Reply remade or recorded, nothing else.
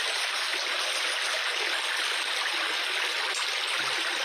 recorded